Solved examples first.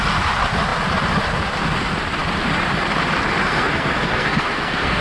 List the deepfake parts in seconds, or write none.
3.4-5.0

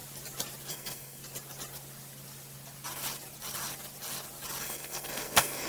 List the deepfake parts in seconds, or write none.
0.7-1.2; 4.6-5.7

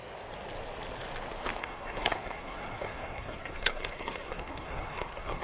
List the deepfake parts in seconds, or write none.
1.6-5.4